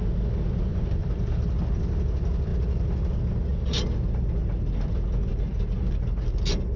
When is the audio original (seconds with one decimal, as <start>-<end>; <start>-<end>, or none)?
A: 0.0-0.7; 1.2-5.3